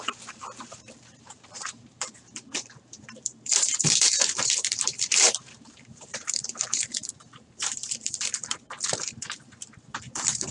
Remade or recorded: remade